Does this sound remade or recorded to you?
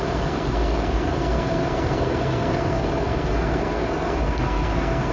remade